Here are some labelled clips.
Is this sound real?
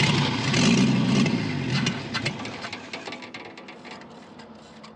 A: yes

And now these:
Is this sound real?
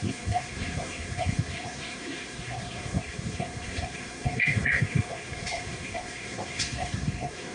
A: no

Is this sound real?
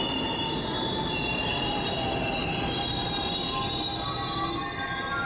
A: yes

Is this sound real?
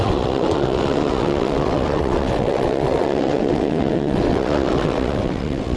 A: no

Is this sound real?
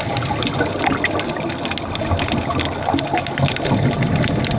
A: yes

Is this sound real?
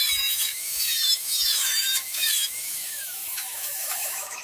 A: no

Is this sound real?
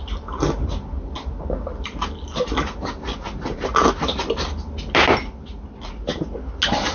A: yes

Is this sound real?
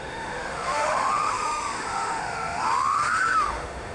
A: no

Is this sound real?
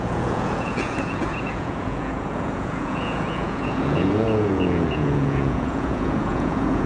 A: no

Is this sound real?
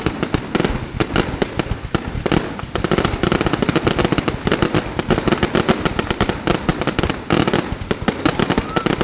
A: yes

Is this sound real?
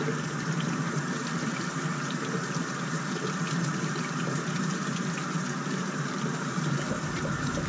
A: no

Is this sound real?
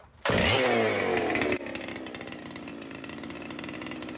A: yes